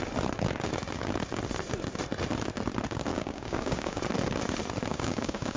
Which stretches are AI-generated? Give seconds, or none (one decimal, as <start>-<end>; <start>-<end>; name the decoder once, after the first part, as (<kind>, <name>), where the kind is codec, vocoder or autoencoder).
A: 3.1-4.0 (codec, DAC); 4.9-5.6